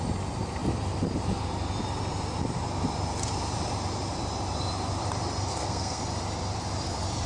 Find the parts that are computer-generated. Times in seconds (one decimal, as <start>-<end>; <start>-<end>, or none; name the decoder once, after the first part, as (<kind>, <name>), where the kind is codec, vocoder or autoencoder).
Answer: 5.5-6.0 (codec, SNAC)